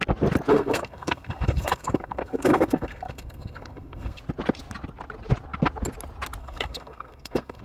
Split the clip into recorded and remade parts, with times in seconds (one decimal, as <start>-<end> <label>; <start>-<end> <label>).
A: 0.0-0.5 recorded; 0.5-4.2 remade; 4.2-6.4 recorded; 6.4-7.6 remade